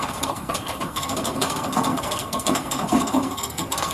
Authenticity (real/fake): fake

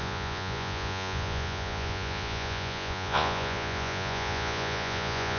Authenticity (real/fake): fake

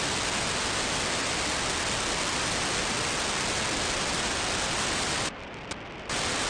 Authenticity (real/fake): real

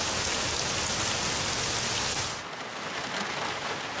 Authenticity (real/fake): real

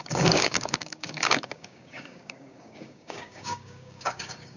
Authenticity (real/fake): fake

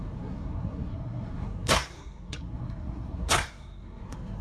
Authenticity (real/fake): fake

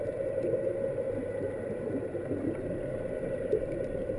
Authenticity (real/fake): fake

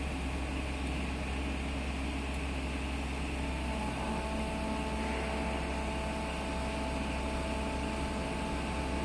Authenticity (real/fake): real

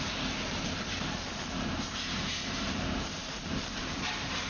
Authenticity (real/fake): fake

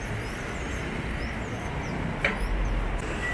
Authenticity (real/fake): real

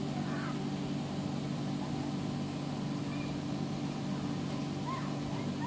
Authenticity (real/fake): real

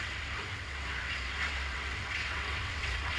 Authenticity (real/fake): fake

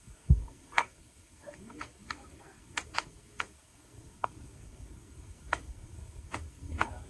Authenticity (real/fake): fake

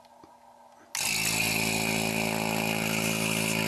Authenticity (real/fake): real